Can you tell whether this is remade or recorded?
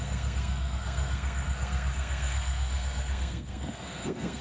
remade